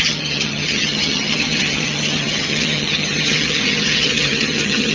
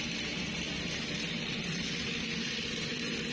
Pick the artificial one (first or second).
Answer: first